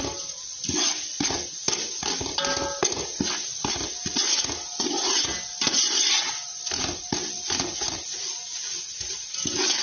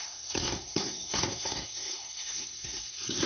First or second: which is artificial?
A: second